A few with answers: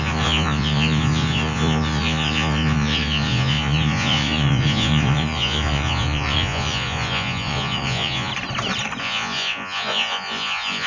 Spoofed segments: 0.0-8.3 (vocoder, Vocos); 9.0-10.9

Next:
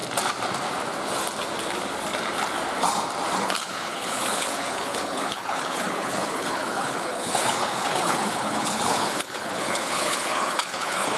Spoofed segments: 3.4-11.2 (codec, HILCodec)

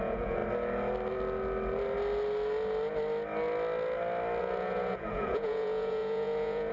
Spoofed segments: 0.0-0.4 (vocoder, Vocos); 4.4-6.7

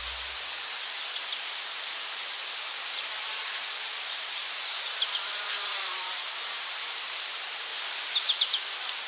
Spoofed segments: 0.0-7.7 (vocoder, BigVGAN v2); 8.3-9.1